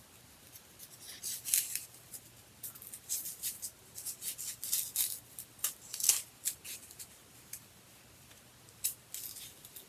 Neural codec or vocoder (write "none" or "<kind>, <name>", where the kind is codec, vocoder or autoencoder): none